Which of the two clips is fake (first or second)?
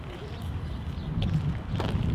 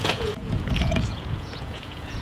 second